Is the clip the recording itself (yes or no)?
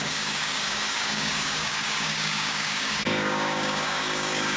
no